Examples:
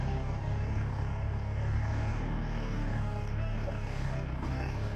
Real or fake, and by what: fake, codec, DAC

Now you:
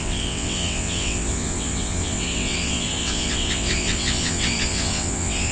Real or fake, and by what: fake, vocoder, WaveNeXt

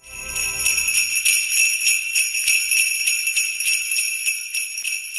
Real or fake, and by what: real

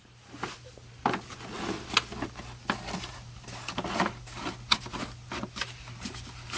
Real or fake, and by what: real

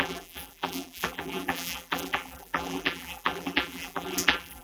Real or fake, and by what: fake, vocoder, BigVGAN v2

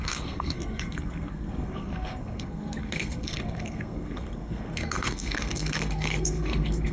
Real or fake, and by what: fake, codec, SNAC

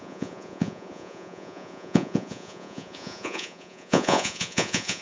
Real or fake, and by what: fake, vocoder, Vocos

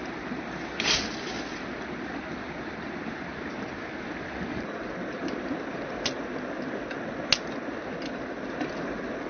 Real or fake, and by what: real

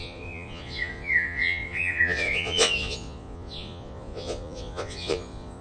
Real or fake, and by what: fake, vocoder, Vocos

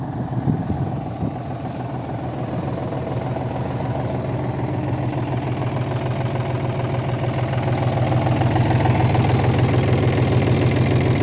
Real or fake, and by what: real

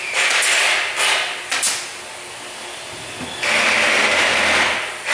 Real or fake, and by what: real